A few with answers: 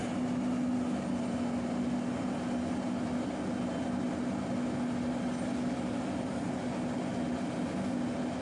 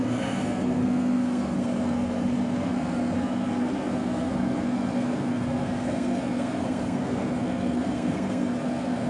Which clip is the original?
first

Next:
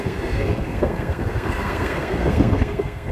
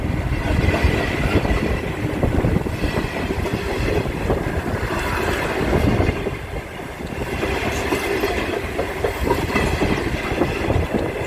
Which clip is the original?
second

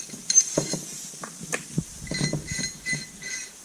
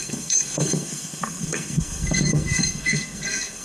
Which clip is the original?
first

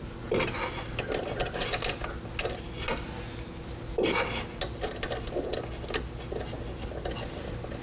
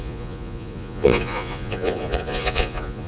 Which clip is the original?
first